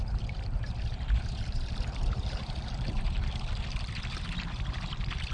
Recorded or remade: remade